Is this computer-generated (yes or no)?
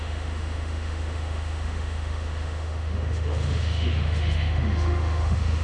yes